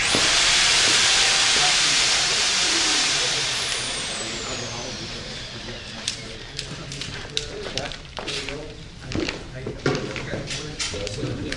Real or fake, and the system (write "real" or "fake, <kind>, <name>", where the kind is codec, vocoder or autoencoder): fake, vocoder, BigVGAN v2